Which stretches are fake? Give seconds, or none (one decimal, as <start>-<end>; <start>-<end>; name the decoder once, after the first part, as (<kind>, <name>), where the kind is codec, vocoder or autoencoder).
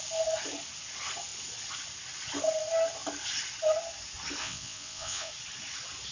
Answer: 4.4-5.3 (vocoder, WaveNeXt)